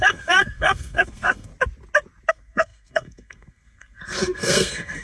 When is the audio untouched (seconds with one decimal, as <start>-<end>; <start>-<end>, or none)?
1.5-2.3